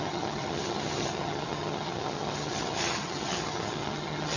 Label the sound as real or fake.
fake